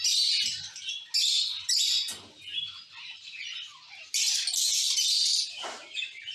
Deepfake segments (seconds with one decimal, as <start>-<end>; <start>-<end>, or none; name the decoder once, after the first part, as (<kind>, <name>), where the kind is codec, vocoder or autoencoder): 2.5-4.1 (vocoder, BigVGAN v2); 4.5-5.4